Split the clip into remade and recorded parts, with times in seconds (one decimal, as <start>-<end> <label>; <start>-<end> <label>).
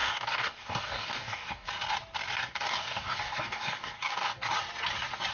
0.0-1.7 remade; 1.7-2.4 recorded; 2.4-4.5 remade; 4.5-5.3 recorded